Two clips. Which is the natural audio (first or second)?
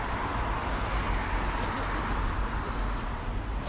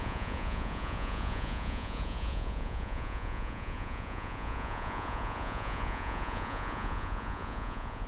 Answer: first